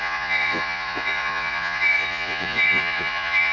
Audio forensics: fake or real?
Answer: fake